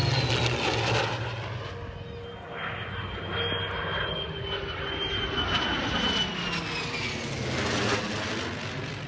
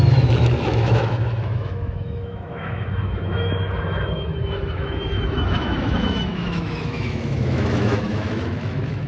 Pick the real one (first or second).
first